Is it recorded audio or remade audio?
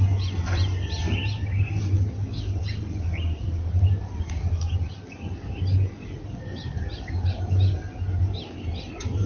recorded